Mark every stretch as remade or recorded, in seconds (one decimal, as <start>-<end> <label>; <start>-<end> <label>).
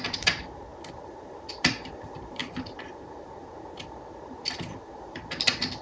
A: 0.0-5.8 remade